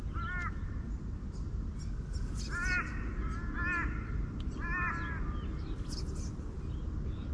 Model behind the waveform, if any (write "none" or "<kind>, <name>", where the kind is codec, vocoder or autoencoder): none